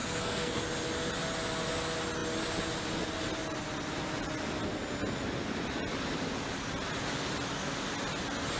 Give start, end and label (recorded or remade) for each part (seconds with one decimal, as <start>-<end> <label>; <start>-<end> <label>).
0.0-0.6 remade; 0.6-8.6 recorded